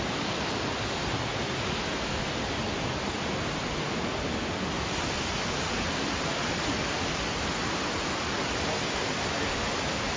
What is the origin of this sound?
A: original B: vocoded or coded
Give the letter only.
A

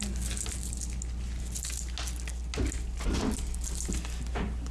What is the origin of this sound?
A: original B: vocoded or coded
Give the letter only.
A